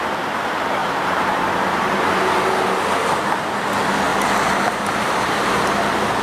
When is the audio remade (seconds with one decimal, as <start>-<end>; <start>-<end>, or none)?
0.8-2.2; 4.1-5.5